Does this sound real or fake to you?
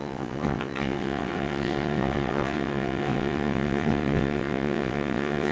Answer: fake